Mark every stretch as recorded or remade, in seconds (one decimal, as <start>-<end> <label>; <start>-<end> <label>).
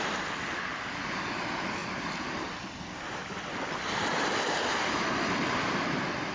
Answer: 0.0-6.3 recorded